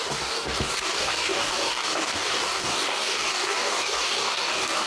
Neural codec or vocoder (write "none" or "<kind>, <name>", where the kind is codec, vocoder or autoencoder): codec, DAC